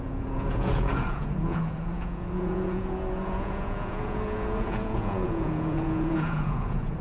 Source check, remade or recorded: remade